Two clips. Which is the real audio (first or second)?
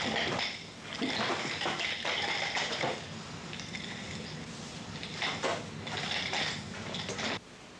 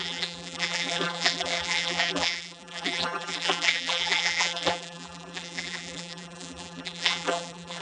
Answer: first